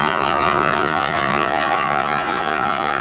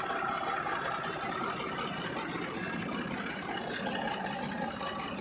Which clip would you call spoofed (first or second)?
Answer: first